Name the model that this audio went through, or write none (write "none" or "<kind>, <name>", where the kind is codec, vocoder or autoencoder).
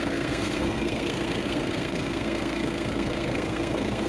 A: codec, SNAC